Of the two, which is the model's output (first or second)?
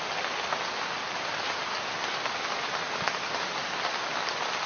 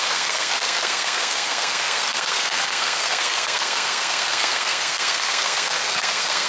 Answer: second